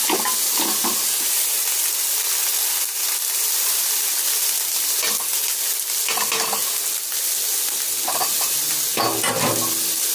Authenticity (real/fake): real